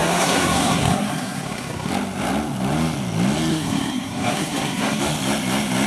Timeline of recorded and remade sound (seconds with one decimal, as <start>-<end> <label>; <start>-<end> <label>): 0.0-1.9 remade; 1.9-3.5 recorded; 3.5-5.0 remade; 5.0-5.9 recorded